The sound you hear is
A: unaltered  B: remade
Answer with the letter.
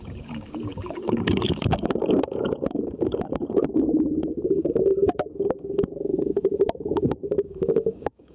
B